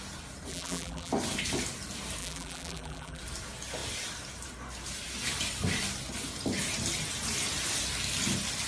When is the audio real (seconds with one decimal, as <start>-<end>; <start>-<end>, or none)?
0.0-0.5; 1.1-2.2; 3.2-8.7